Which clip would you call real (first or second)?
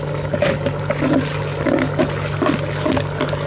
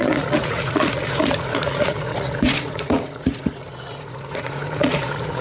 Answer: first